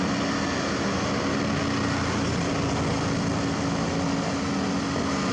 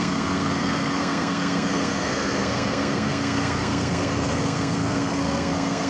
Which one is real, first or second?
first